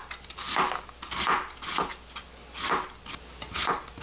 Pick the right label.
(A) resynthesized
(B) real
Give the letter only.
B